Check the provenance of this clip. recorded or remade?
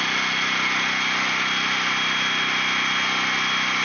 recorded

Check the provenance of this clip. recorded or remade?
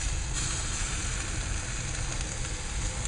recorded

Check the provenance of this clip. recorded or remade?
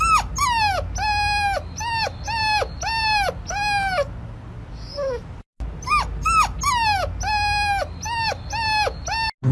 recorded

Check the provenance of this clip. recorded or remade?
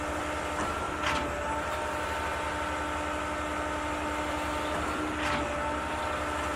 recorded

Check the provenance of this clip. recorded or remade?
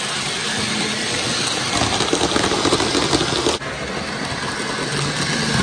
recorded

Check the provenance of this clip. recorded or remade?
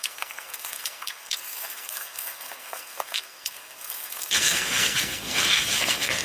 remade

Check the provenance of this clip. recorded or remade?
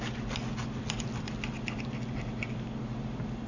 recorded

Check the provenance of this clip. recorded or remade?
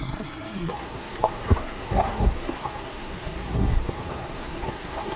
remade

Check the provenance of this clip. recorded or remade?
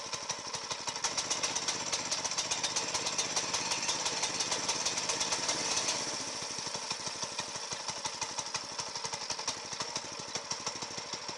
recorded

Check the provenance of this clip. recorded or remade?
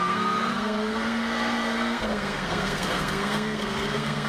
remade